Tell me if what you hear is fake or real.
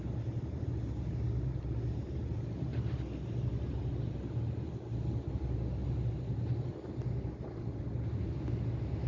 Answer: real